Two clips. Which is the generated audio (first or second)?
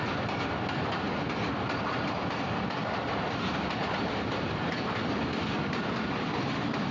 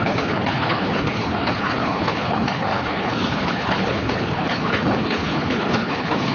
second